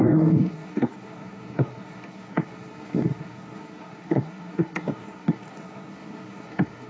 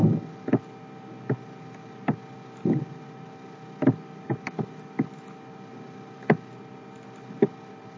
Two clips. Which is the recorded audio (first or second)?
second